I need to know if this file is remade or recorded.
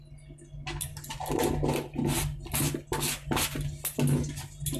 recorded